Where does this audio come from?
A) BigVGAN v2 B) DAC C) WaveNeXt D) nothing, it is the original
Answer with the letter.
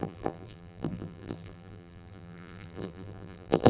A